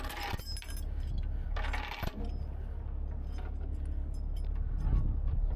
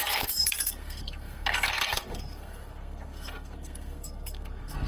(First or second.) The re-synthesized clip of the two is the second